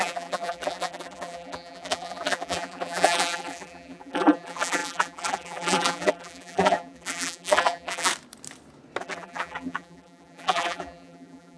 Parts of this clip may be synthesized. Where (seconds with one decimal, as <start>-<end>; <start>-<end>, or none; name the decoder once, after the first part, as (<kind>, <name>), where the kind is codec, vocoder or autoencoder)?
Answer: 0.0-8.1 (vocoder, BigVGAN v2); 9.0-11.6